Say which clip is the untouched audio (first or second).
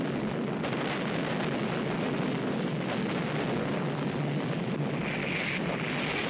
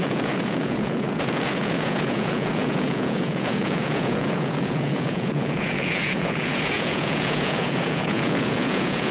first